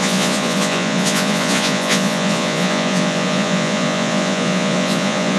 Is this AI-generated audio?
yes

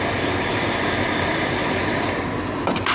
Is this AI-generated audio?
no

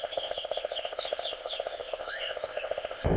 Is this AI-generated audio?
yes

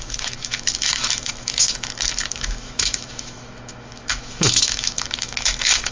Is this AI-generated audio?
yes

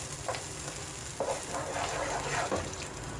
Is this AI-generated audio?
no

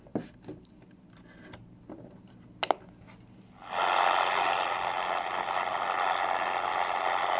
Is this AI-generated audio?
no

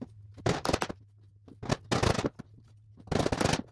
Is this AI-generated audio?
no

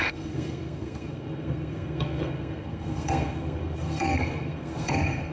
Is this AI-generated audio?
yes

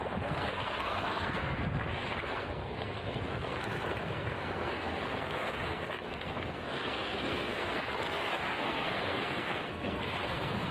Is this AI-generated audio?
yes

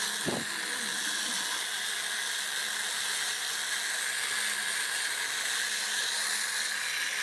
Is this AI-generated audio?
no